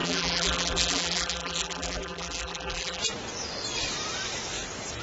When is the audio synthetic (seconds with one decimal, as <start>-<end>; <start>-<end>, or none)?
0.0-3.0